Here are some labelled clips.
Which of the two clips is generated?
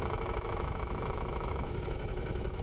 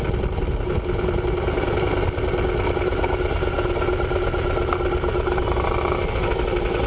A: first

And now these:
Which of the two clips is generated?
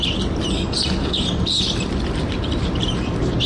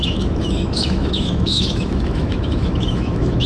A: second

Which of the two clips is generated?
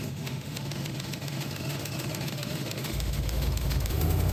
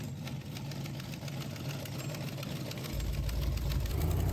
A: first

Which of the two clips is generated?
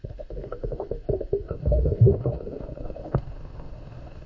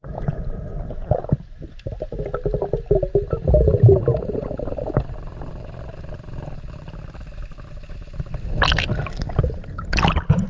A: first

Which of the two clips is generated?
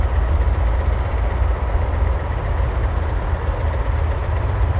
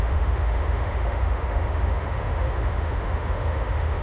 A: second